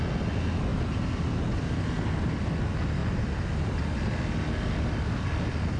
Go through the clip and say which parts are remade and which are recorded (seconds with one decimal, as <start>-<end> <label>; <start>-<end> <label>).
0.0-5.8 recorded